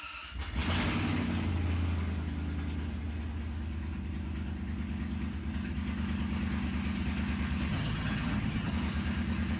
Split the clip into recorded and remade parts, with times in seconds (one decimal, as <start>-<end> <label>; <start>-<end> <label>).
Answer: 0.0-7.7 recorded; 7.7-8.7 remade; 8.7-9.6 recorded